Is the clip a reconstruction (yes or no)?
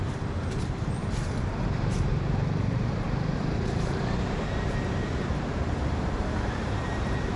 yes